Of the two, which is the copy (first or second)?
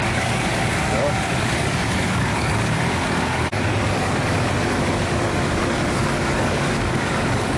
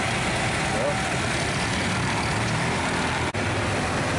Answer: first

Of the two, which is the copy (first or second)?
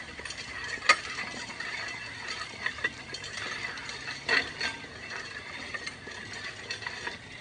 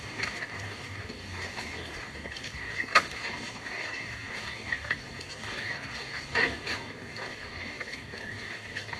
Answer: second